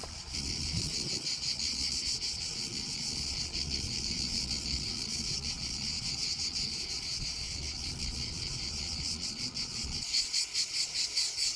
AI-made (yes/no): yes